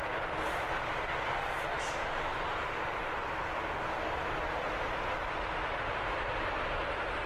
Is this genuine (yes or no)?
yes